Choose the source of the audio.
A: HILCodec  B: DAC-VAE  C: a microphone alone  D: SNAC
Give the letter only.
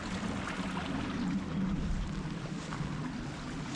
C